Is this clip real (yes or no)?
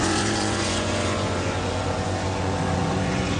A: no